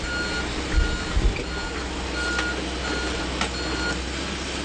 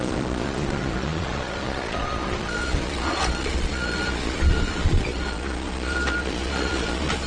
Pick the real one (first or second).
first